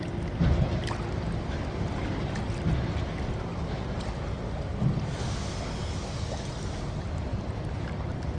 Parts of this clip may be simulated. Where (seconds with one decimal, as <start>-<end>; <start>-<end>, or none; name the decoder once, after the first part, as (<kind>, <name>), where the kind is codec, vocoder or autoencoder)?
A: 3.5-4.2 (vocoder, BigVGAN v2); 7.3-8.4